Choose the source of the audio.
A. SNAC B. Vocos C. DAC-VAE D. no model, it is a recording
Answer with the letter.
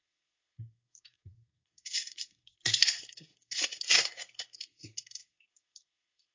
A